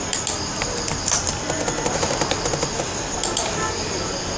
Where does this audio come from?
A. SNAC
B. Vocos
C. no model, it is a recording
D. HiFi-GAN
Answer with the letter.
C